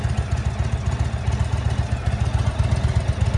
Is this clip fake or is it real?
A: real